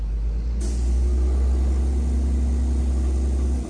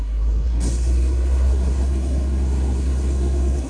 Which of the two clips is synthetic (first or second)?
second